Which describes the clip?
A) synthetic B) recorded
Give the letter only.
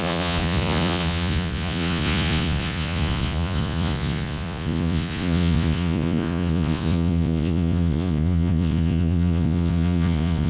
A